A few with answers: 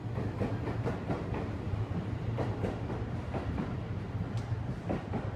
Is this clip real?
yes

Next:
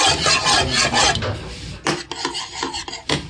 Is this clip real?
yes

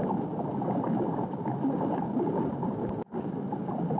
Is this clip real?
yes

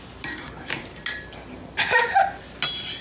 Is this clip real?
yes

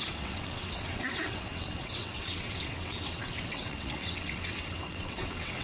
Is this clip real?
no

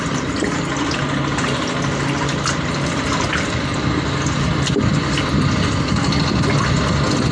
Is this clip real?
yes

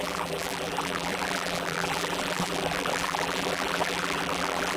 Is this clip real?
no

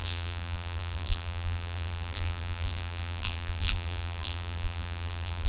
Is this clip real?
no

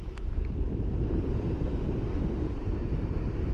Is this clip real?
yes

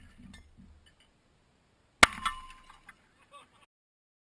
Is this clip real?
yes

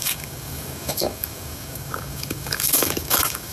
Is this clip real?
no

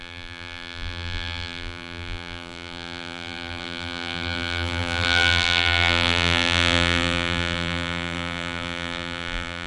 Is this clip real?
no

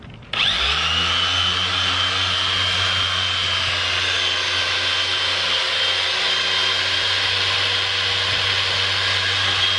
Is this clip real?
yes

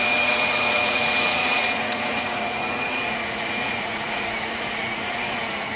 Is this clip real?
no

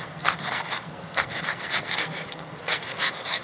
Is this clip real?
no